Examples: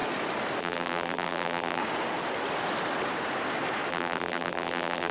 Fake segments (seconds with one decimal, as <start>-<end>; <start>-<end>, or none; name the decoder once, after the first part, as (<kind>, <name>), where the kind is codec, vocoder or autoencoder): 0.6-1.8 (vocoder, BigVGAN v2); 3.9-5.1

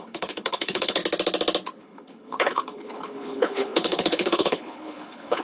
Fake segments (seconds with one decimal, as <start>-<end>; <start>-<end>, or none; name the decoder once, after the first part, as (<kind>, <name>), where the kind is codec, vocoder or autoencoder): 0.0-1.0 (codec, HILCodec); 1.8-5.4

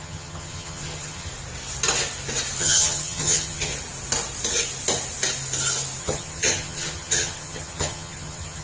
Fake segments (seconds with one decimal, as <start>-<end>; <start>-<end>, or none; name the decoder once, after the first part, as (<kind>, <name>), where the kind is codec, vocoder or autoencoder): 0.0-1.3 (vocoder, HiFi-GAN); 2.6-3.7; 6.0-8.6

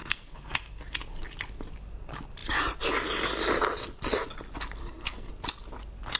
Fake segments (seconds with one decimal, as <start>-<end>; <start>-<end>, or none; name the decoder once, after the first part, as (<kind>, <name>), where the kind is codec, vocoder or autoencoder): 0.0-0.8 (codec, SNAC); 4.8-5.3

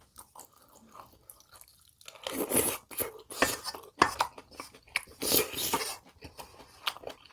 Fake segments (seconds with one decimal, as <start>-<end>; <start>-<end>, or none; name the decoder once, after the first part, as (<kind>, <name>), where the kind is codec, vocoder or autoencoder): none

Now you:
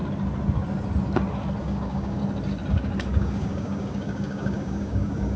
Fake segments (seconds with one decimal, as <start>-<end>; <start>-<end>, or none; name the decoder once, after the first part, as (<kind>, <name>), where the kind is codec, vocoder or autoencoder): 1.6-2.2 (codec, DAC); 2.7-5.4